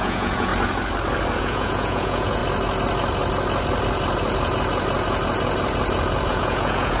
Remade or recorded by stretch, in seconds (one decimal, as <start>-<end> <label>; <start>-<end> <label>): 0.0-0.5 remade; 0.5-1.4 recorded; 1.4-2.4 remade; 2.4-6.3 recorded; 6.3-7.0 remade